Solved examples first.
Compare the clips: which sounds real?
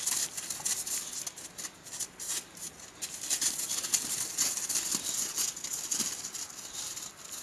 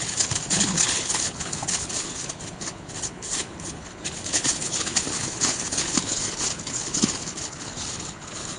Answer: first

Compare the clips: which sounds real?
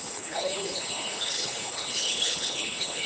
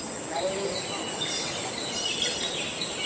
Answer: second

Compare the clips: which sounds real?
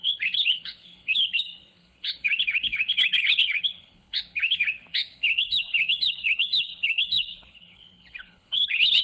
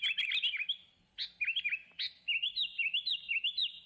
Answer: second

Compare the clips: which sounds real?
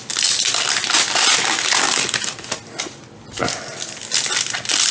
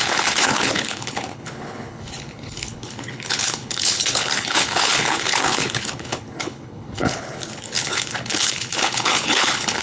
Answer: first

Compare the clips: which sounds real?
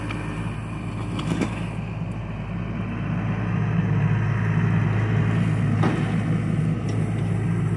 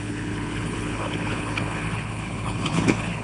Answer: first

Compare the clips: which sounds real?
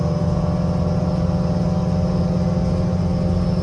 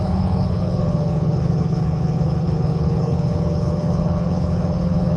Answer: first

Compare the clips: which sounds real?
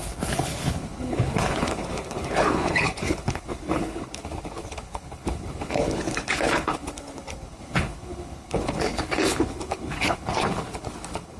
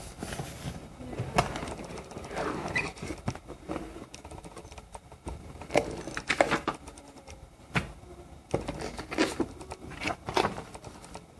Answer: second